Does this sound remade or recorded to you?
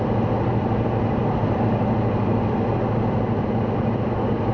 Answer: remade